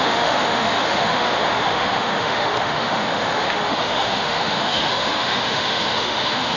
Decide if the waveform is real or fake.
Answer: fake